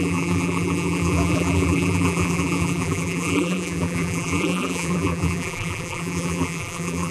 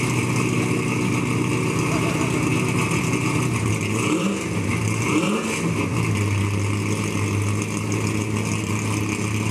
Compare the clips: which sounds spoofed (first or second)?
first